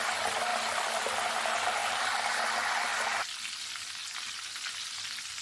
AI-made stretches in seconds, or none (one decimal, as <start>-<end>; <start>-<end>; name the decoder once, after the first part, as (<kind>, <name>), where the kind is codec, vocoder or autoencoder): 1.8-2.3 (vocoder, BigVGAN v2); 4.0-4.7